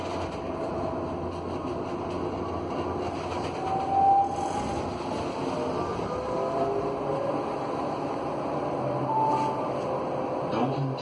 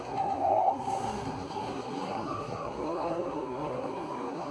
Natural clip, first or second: first